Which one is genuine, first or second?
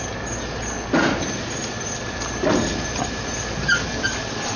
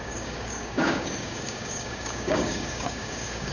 first